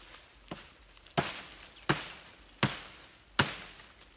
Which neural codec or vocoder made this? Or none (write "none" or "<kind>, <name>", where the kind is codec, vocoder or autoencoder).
none